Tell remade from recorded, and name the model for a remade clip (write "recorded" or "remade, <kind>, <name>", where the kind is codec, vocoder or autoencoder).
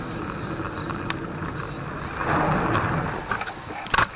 recorded